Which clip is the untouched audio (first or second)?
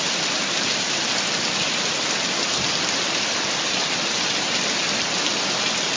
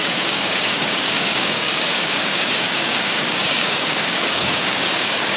first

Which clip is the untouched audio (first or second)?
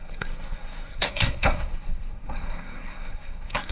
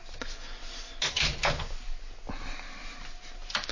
second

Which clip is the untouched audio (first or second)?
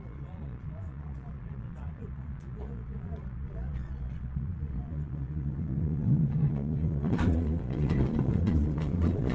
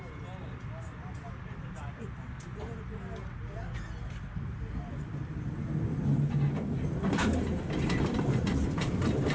second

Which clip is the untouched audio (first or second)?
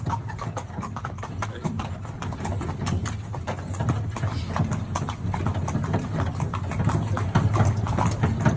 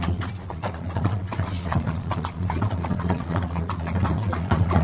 first